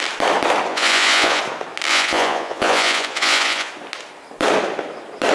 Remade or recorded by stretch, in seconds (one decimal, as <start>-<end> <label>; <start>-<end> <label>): 0.0-0.7 recorded; 0.7-1.4 remade; 1.4-1.9 recorded; 1.9-3.7 remade; 3.7-5.3 recorded